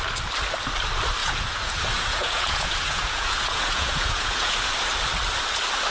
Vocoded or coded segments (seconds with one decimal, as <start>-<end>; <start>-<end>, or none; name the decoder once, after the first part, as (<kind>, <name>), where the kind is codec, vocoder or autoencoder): 1.2-4.7 (vocoder, Vocos)